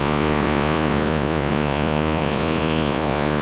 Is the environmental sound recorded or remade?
remade